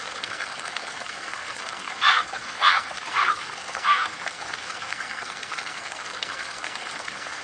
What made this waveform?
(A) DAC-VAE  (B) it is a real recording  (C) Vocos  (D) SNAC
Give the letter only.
D